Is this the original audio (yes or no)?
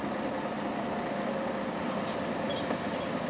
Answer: yes